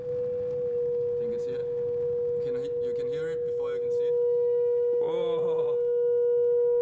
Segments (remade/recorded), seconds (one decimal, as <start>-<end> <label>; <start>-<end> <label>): 0.0-6.8 recorded